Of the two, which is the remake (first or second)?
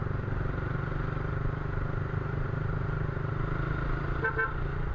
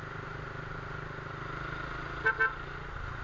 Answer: first